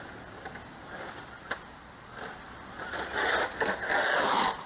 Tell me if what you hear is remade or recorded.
recorded